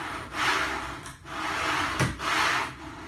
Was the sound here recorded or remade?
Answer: recorded